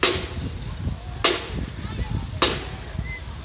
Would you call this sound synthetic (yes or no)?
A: no